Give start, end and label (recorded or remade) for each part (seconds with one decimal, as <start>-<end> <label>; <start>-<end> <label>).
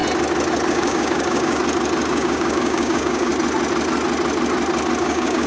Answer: 0.0-0.7 recorded; 0.7-1.6 remade; 1.6-2.1 recorded; 2.1-3.3 remade; 3.3-5.0 recorded; 5.0-5.5 remade